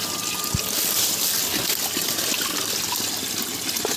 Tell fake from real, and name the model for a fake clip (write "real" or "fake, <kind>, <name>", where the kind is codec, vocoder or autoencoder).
real